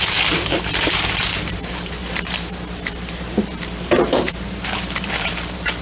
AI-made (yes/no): yes